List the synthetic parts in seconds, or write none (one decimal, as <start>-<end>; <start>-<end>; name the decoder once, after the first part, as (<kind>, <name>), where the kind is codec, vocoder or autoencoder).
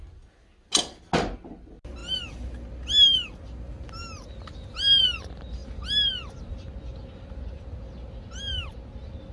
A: none